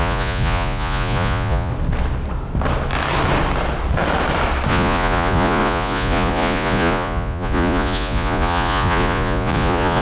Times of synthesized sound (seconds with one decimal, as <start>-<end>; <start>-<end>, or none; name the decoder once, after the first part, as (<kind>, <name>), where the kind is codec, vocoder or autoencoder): 0.0-1.7 (vocoder, Vocos); 4.7-10.0